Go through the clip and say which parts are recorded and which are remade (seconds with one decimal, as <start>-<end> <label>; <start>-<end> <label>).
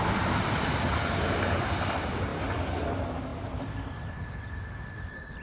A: 0.0-2.3 recorded; 2.3-2.8 remade; 2.8-5.4 recorded